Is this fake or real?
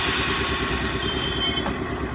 real